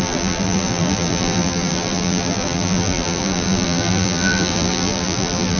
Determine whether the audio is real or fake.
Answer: fake